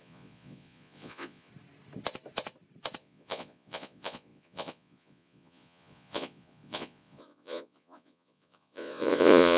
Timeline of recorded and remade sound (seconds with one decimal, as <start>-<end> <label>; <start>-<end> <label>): 0.0-1.5 remade; 1.5-3.0 recorded; 3.0-9.6 remade